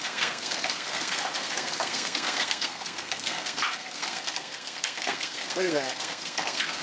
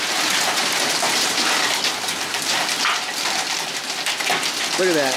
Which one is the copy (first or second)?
first